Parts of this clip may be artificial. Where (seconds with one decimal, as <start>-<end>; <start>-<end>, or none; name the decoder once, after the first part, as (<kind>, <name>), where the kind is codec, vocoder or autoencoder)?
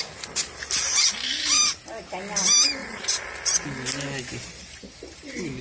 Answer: none